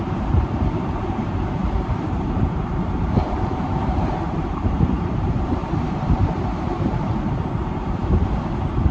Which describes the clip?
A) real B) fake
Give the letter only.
B